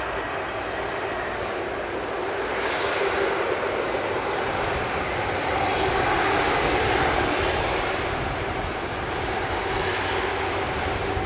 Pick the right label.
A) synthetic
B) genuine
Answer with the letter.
B